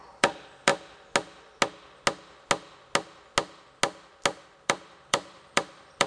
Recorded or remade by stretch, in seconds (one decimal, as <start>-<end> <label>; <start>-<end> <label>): 0.0-0.7 remade; 0.7-4.4 recorded; 4.4-6.1 remade